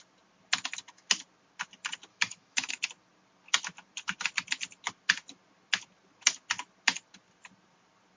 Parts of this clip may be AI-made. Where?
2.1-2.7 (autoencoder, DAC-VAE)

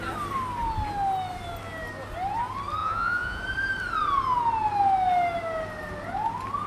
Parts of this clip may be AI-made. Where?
2.8-3.4 (vocoder, Vocos)

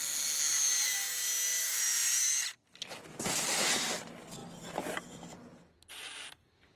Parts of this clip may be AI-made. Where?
none

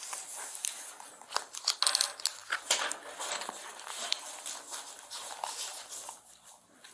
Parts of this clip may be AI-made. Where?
none